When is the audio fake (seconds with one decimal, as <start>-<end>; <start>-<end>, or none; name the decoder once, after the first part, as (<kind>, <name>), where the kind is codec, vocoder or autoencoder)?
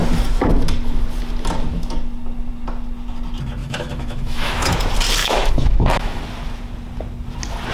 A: 3.6-4.8 (autoencoder, DAC-VAE); 5.2-6.2